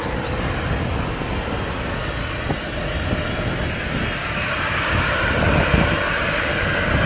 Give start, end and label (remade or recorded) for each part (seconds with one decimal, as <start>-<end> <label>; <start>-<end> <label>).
0.0-4.2 recorded; 4.2-5.1 remade; 5.1-7.1 recorded